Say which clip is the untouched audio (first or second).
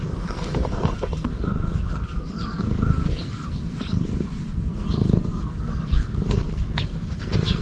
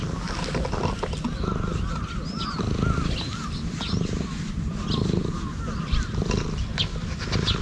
second